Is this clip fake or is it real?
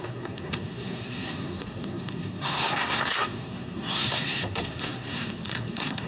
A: fake